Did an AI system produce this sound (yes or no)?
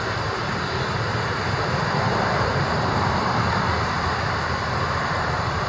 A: yes